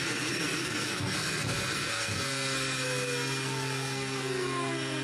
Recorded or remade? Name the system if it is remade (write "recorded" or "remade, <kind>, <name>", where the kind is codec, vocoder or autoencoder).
remade, codec, SNAC